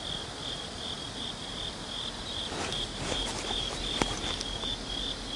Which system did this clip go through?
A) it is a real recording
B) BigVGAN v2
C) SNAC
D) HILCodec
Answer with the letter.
A